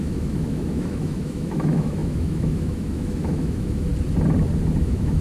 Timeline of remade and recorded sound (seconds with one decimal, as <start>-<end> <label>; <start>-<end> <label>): 0.0-3.9 remade; 3.9-4.8 recorded; 4.8-5.2 remade

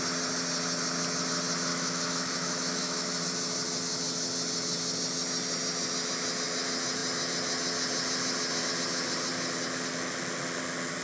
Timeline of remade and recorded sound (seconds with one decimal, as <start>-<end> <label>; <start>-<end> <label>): 0.0-1.7 recorded; 1.7-3.2 remade; 3.2-11.0 recorded

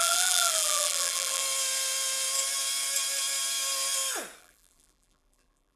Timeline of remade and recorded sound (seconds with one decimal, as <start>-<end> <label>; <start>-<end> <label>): 0.0-1.4 remade; 1.4-4.4 recorded; 4.4-5.8 remade

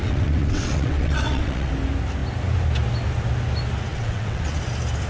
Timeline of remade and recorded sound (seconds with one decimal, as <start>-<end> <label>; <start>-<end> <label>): 0.0-1.7 remade; 1.7-3.9 recorded; 3.9-4.6 remade; 4.6-5.1 recorded

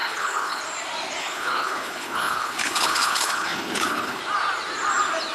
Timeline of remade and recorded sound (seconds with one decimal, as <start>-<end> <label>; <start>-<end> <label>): 0.0-0.6 remade; 0.6-1.2 recorded; 1.2-4.2 remade; 4.2-5.3 recorded

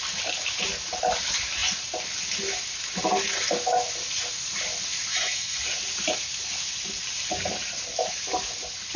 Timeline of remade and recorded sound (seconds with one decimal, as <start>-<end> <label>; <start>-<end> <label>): 0.0-5.1 recorded; 5.1-5.6 remade; 5.6-9.0 recorded

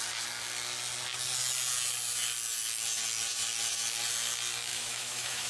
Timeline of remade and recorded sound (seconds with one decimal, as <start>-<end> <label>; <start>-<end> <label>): 0.0-4.7 recorded; 4.7-5.5 remade